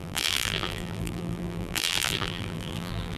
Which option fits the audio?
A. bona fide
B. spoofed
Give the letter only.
B